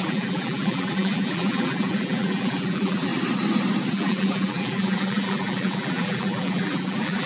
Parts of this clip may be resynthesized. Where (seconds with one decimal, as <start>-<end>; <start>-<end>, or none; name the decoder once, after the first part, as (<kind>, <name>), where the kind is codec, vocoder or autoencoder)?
0.0-3.1 (vocoder, BigVGAN v2); 3.9-7.3